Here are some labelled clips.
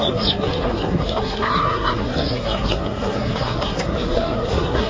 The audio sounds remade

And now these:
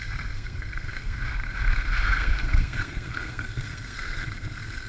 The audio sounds remade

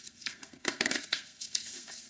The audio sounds remade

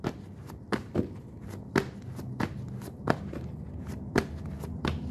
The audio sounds recorded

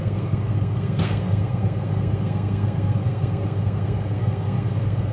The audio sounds remade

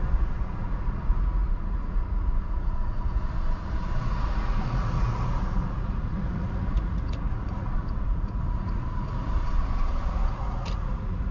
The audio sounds remade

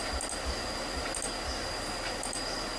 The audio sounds recorded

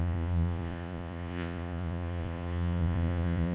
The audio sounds remade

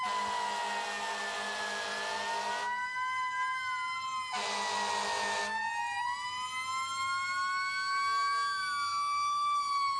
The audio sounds recorded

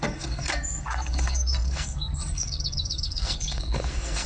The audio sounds remade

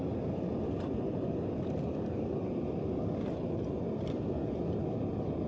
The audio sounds recorded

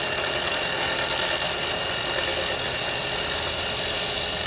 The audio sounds recorded